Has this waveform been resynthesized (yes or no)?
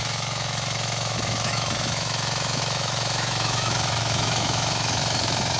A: yes